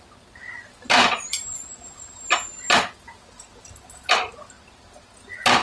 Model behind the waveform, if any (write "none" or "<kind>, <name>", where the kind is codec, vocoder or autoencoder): none